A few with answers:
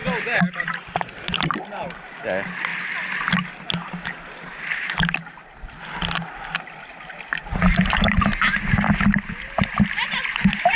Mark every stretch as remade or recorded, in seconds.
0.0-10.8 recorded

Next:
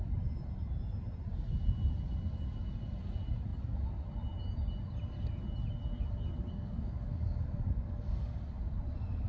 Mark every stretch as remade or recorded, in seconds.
0.0-6.4 recorded; 6.4-8.4 remade; 8.4-9.3 recorded

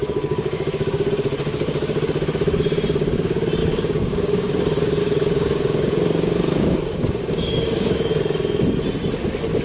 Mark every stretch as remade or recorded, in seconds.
0.0-1.1 remade; 1.1-3.6 recorded; 3.6-4.6 remade; 4.6-5.0 recorded; 5.0-8.1 remade; 8.1-9.6 recorded

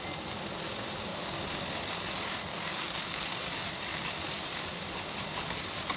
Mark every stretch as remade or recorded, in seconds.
0.0-2.5 recorded; 2.5-3.5 remade; 3.5-6.0 recorded